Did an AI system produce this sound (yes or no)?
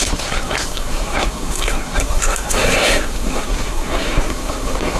yes